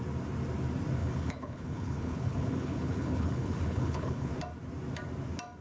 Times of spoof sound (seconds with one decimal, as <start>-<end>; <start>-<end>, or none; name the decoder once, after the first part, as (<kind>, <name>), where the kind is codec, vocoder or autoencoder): 1.0-4.3 (codec, HILCodec)